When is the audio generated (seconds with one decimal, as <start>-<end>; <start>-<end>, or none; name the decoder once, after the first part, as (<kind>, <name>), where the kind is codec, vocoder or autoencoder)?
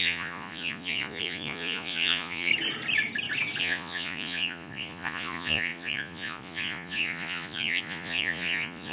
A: 0.0-2.5 (vocoder, Vocos); 3.6-8.9